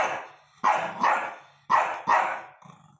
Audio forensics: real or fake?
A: real